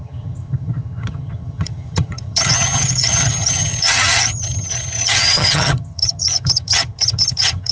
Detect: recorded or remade remade